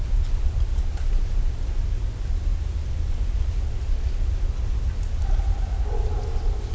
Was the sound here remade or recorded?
recorded